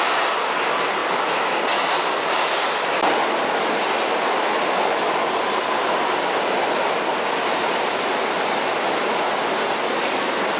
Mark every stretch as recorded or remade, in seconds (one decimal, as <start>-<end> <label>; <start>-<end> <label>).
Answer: 0.0-10.6 recorded

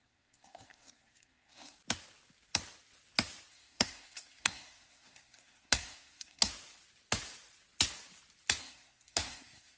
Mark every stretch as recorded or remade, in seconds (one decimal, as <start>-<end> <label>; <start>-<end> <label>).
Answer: 0.0-1.8 remade; 1.8-3.5 recorded; 3.5-6.5 remade; 6.5-8.6 recorded; 8.6-9.8 remade